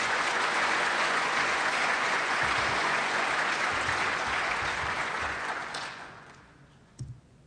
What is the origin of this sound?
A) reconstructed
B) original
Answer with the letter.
A